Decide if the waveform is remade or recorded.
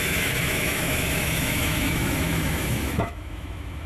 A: remade